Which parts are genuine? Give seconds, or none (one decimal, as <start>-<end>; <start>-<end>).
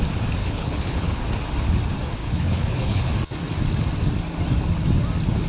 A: 0.0-0.4; 1.2-2.2; 3.1-5.5